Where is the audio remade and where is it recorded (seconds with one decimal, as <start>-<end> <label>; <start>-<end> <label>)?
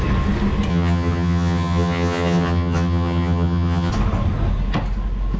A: 0.0-0.7 recorded; 0.7-3.9 remade; 3.9-5.4 recorded